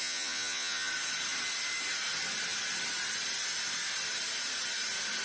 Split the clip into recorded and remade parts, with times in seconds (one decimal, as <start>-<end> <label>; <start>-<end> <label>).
0.0-0.9 remade; 0.9-5.2 recorded